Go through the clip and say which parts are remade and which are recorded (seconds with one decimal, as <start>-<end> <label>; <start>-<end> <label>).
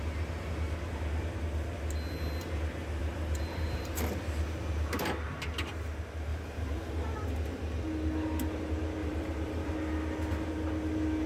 0.0-3.0 recorded; 3.0-4.2 remade; 4.2-6.3 recorded; 6.3-6.9 remade; 6.9-9.0 recorded; 9.0-9.7 remade; 9.7-11.3 recorded